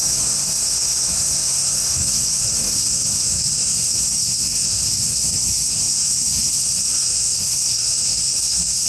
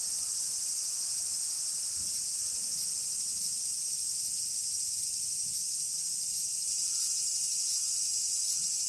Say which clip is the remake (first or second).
first